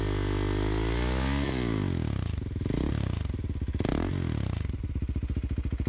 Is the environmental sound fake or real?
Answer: real